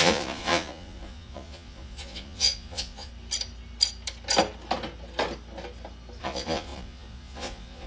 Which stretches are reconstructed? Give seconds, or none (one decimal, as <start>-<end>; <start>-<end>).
0.0-3.1; 6.2-7.9